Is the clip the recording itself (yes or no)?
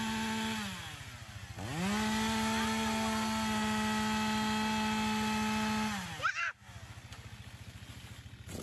yes